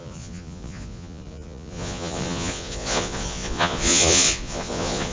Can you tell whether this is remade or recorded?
remade